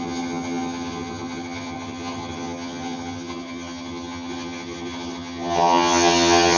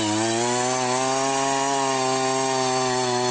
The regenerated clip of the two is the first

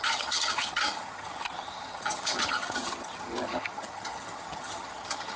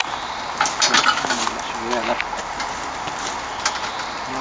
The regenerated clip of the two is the first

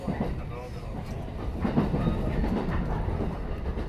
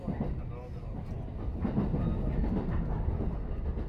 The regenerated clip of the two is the first